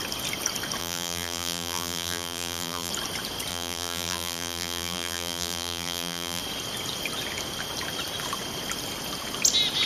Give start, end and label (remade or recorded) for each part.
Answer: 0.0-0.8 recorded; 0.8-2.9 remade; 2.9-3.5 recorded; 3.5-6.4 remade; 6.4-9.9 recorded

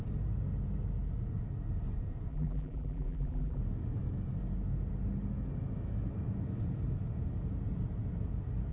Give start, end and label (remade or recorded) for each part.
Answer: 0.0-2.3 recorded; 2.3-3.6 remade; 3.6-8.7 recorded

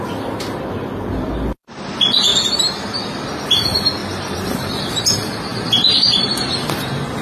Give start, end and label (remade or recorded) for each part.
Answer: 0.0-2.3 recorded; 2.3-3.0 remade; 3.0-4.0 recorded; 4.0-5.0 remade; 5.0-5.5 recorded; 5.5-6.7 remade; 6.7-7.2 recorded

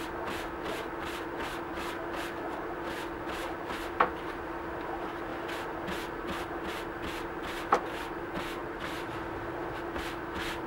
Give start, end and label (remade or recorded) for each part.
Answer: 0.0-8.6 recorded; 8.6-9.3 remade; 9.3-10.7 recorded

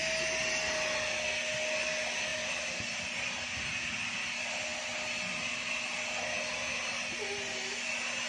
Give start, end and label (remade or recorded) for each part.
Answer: 0.0-2.3 recorded; 2.3-3.6 remade; 3.6-8.3 recorded

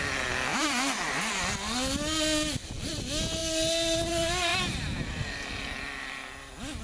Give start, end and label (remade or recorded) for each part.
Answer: 0.0-0.5 recorded; 0.5-1.3 remade; 1.3-6.8 recorded

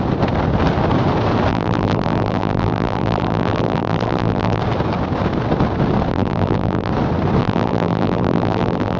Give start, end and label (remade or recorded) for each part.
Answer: 0.0-1.5 recorded; 1.5-4.6 remade; 4.6-6.1 recorded; 6.1-6.9 remade; 6.9-7.4 recorded; 7.4-9.0 remade